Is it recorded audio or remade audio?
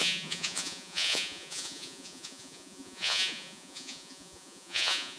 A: remade